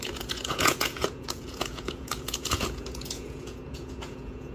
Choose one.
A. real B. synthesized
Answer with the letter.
B